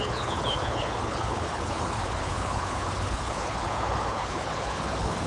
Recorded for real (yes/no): no